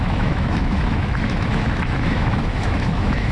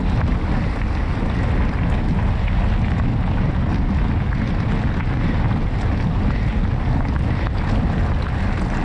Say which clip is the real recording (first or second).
second